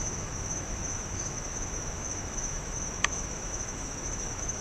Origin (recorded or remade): remade